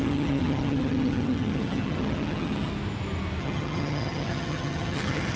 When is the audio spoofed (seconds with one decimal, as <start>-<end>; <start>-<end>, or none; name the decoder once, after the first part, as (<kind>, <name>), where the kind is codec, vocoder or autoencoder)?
0.0-2.7 (vocoder, HiFi-GAN); 3.4-5.4